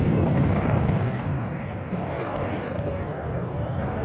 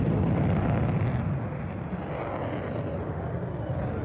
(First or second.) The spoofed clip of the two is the first